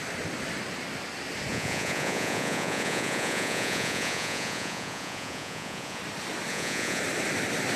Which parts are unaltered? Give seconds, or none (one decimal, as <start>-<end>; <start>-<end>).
0.0-1.5; 6.0-6.5; 7.0-7.8